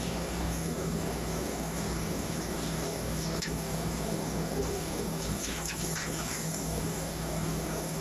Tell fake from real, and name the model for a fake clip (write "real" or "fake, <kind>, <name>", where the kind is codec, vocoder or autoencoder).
fake, codec, DAC